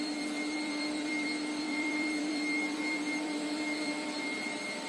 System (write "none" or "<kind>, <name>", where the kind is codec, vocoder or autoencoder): vocoder, BigVGAN v2